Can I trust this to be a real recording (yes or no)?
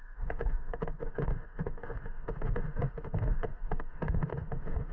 no